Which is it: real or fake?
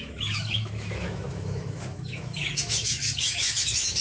fake